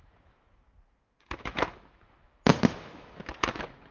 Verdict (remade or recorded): remade